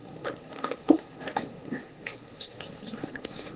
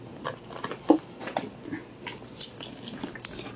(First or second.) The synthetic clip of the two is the first